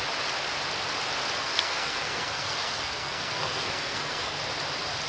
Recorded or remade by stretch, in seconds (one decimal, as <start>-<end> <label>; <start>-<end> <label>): 0.0-1.4 recorded; 1.4-4.4 remade; 4.4-5.1 recorded